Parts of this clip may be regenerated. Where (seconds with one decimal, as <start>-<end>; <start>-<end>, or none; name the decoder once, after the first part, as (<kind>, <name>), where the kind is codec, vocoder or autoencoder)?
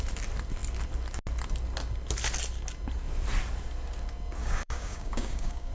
4.4-5.7 (codec, DAC)